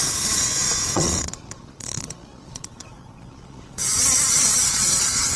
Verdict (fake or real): fake